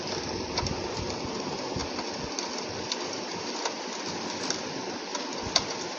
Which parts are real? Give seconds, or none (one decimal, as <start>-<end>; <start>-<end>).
0.0-6.0